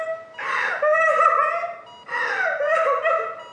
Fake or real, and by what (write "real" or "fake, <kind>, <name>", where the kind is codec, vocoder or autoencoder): real